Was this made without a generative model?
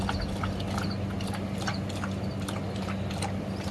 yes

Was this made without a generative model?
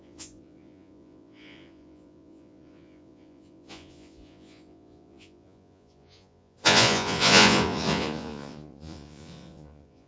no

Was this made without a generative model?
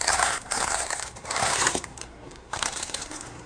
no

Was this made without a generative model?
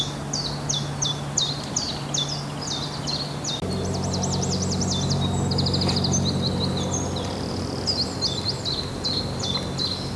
yes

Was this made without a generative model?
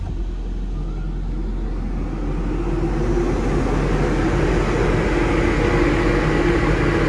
yes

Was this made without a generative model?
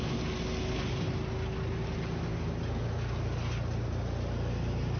yes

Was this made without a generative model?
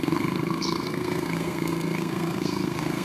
no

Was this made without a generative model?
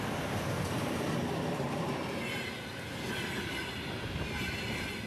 yes